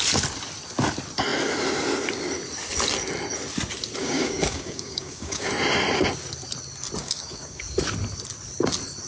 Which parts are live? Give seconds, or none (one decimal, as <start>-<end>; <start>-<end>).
0.0-4.0; 5.5-7.0; 7.6-9.1